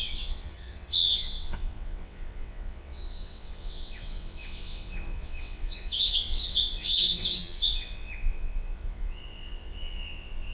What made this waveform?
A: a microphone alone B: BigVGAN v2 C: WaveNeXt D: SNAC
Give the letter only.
C